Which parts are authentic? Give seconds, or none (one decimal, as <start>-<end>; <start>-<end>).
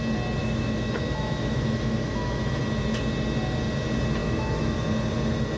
0.0-0.4; 2.6-4.2; 4.9-5.6